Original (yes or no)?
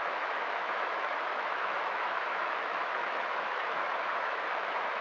no